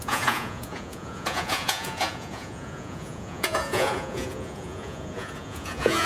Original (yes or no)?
no